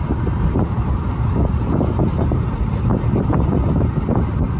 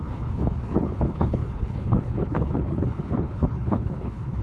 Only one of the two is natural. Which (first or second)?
first